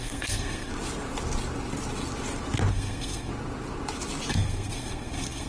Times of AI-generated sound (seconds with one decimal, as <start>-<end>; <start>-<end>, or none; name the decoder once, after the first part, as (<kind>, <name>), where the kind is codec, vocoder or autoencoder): 0.0-0.7 (codec, SNAC); 2.7-3.3; 4.3-5.5